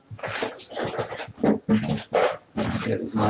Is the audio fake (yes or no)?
no